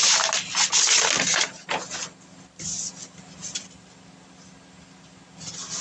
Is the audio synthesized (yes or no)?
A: no